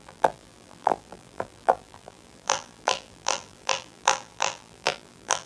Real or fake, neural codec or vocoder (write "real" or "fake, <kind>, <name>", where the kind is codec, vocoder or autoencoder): fake, vocoder, BigVGAN v2